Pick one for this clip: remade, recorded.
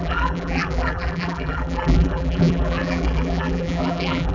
remade